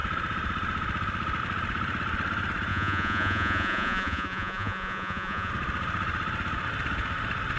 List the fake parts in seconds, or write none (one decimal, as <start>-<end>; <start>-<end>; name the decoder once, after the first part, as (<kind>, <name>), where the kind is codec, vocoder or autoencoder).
2.7-5.5 (vocoder, Vocos)